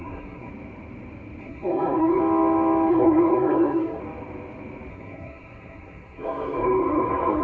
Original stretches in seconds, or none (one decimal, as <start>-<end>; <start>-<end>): 0.5-1.4; 2.2-2.9; 4.0-4.9